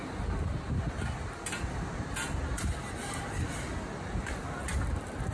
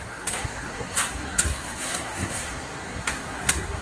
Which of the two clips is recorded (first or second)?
first